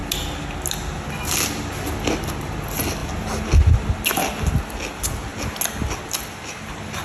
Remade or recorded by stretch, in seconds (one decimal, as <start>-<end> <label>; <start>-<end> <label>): 0.0-7.0 recorded